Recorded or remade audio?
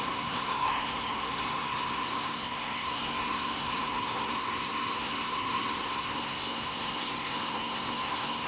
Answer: remade